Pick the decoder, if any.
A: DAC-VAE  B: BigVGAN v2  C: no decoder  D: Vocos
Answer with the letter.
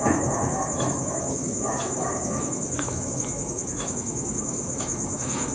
A